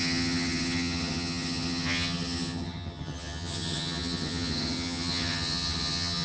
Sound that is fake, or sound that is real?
fake